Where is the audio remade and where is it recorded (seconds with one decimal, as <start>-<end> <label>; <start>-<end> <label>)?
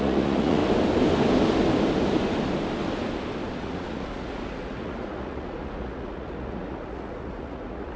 0.0-0.6 remade; 0.6-3.6 recorded; 3.6-8.0 remade